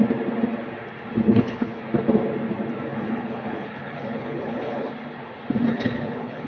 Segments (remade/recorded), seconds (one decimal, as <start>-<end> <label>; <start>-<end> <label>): 0.0-1.3 recorded; 1.3-1.8 remade; 1.8-2.9 recorded; 2.9-4.9 remade; 4.9-5.7 recorded; 5.7-6.5 remade